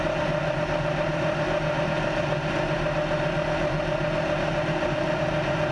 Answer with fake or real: real